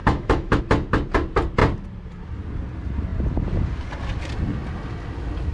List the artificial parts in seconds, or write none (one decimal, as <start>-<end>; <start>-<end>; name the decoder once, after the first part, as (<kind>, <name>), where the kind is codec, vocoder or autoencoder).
0.0-0.6 (autoencoder, DAC-VAE)